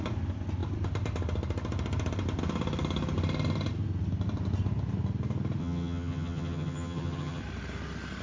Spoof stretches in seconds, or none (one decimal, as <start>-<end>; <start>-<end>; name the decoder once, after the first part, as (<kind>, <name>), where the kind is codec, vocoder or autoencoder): 5.6-7.4 (vocoder, HiFi-GAN)